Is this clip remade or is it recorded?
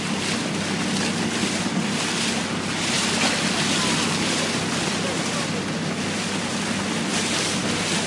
recorded